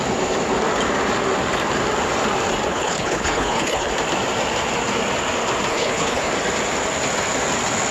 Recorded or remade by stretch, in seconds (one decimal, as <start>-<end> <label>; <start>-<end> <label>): 0.0-2.7 recorded; 2.7-3.9 remade; 3.9-5.7 recorded; 5.7-6.3 remade; 6.3-7.9 recorded